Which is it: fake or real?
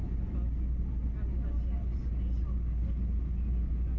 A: real